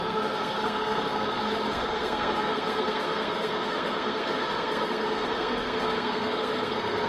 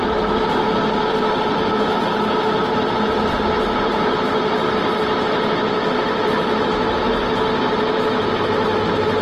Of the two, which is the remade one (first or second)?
first